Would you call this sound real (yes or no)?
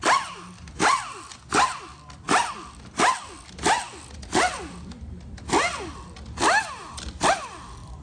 yes